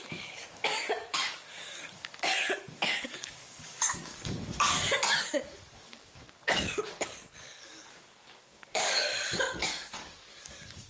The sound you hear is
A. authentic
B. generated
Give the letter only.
B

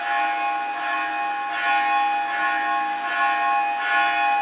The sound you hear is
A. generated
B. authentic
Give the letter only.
B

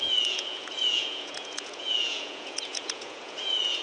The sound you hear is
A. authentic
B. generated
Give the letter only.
B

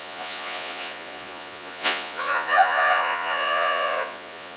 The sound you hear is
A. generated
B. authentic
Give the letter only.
A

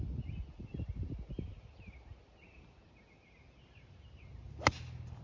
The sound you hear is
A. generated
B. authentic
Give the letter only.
B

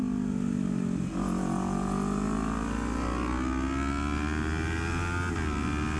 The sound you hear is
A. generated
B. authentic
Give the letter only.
B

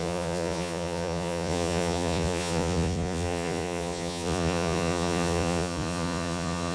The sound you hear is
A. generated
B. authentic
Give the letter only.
A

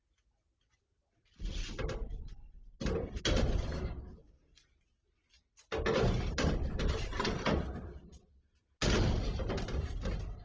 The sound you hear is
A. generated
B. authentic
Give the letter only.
B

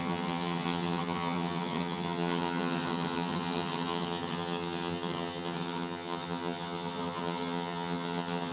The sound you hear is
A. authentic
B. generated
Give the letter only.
B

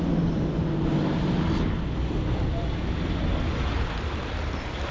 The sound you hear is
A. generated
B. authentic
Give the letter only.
B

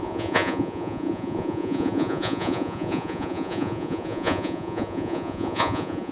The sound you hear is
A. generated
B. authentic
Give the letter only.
A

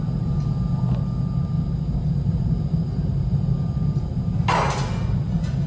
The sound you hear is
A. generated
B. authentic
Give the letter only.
B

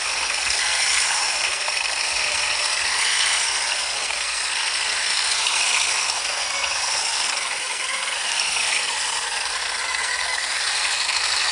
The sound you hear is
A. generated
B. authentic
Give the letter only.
A